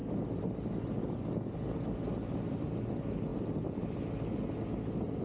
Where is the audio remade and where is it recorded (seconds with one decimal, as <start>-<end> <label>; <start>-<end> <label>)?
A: 0.0-5.2 recorded